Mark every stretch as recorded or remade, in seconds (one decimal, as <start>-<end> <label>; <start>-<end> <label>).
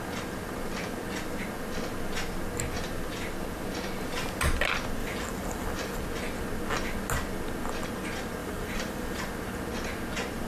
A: 0.0-5.0 recorded; 5.0-6.0 remade; 6.0-8.4 recorded; 8.4-9.3 remade; 9.3-10.5 recorded